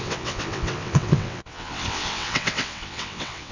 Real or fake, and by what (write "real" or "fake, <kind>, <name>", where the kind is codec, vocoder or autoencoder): fake, vocoder, WaveNeXt